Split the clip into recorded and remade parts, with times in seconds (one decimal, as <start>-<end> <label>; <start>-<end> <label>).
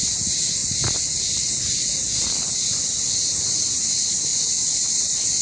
0.0-5.4 recorded